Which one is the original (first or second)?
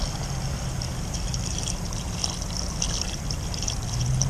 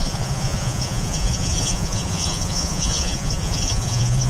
first